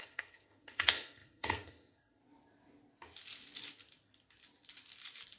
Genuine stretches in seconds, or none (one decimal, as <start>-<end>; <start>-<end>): 2.2-5.4